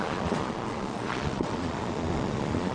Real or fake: fake